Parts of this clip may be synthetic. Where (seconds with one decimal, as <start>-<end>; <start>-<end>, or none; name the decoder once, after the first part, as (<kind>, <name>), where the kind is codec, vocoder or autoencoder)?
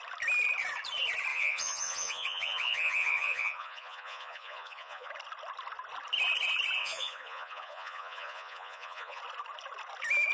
1.3-5.1 (vocoder, Vocos); 6.8-9.2